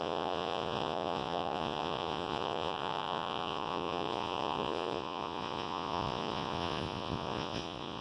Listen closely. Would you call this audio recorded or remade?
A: remade